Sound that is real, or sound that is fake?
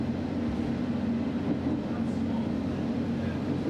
real